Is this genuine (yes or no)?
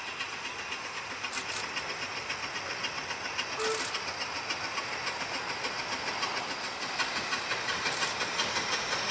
yes